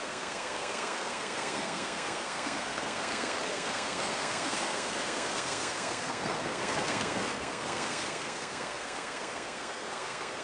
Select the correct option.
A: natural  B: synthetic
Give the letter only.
B